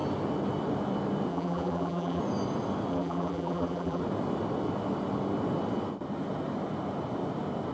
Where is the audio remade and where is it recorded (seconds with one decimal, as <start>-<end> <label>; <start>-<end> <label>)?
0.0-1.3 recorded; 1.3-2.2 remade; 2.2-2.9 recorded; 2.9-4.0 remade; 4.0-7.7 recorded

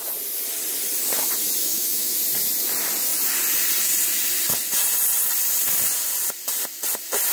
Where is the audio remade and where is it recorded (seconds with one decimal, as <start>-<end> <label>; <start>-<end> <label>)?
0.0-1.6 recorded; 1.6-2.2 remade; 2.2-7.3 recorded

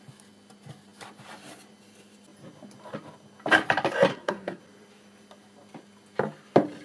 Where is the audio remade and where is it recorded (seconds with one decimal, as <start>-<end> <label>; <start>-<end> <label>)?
0.0-4.1 recorded; 4.1-4.6 remade; 4.6-6.8 recorded

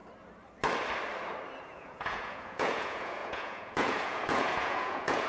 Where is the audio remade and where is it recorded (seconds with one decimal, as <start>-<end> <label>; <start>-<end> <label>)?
0.0-1.6 recorded; 1.6-5.3 remade

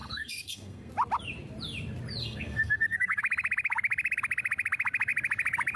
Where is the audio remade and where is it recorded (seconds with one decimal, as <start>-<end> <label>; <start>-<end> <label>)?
0.0-0.9 remade; 0.9-2.2 recorded; 2.2-3.2 remade; 3.2-5.8 recorded